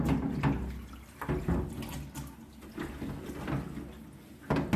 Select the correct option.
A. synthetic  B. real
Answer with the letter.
B